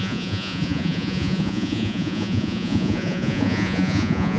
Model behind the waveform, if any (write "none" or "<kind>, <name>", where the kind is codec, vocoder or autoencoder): vocoder, Vocos